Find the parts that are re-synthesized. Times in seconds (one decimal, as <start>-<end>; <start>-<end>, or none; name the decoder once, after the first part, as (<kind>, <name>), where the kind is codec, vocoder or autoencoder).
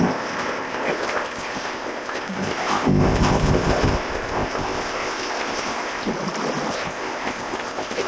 0.0-6.1 (codec, ZipCodec); 6.7-8.1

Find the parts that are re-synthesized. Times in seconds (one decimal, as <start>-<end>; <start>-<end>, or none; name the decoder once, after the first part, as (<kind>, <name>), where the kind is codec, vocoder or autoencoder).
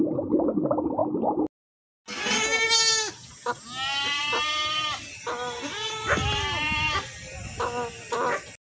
none